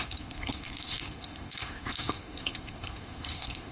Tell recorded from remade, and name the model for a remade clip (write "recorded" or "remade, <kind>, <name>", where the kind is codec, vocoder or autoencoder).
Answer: remade, codec, SNAC